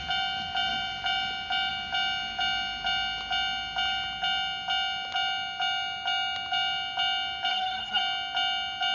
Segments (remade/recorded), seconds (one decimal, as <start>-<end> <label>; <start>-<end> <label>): 0.0-7.5 recorded; 7.5-8.0 remade; 8.0-8.9 recorded